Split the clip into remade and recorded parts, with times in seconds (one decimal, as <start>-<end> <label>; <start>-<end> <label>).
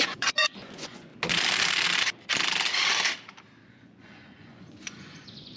0.0-1.1 remade; 1.1-3.7 recorded; 3.7-5.6 remade